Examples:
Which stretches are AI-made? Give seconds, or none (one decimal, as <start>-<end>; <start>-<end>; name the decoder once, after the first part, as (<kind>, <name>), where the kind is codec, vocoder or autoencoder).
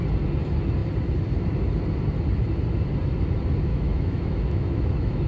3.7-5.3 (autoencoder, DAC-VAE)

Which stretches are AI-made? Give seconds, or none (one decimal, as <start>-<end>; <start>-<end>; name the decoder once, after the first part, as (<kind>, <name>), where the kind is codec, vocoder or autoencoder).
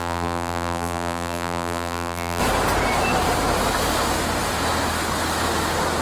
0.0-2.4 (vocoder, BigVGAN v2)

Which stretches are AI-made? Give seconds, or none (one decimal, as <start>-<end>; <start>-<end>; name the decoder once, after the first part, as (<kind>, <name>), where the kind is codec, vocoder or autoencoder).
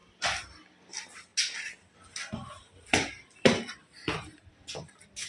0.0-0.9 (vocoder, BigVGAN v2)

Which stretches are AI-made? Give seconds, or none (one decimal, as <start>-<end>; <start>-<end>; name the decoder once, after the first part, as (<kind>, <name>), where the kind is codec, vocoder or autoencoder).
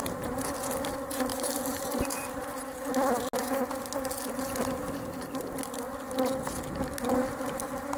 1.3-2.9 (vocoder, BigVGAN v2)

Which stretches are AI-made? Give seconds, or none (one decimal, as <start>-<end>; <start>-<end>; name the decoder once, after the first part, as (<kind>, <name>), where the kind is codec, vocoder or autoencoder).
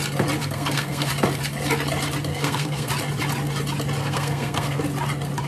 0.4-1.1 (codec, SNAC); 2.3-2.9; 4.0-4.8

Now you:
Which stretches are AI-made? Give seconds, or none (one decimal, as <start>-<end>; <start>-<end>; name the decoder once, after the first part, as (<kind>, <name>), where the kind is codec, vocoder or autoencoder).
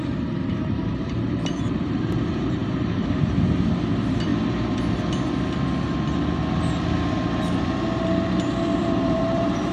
0.0-4.3 (vocoder, BigVGAN v2); 8.8-9.7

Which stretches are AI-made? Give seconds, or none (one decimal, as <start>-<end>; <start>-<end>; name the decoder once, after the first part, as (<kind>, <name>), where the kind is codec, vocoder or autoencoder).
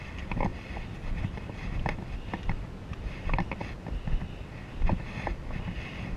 none